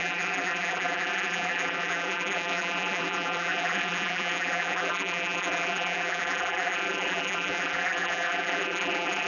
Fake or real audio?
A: fake